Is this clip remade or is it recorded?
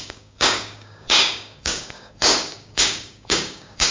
remade